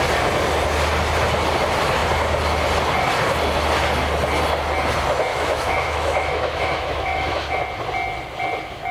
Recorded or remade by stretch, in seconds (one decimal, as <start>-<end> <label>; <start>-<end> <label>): 0.0-5.3 recorded; 5.3-7.6 remade; 7.6-8.9 recorded